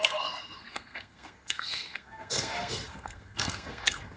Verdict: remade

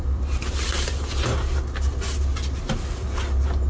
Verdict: recorded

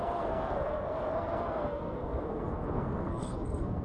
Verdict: remade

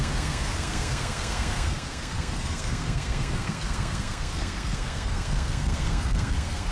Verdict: remade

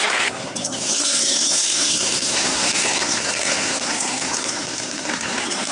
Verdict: remade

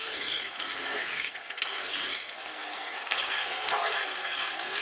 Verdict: remade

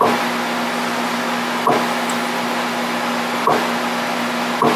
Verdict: recorded